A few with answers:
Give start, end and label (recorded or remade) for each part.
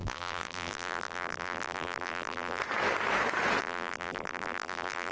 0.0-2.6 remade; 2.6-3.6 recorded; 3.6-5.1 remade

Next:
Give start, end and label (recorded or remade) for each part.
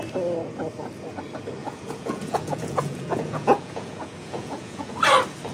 0.0-1.6 recorded; 1.6-4.9 remade; 4.9-5.5 recorded